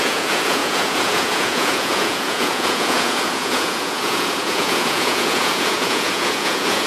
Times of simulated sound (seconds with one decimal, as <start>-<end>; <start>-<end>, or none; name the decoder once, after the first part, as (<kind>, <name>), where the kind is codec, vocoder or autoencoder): 0.0-6.9 (vocoder, Vocos)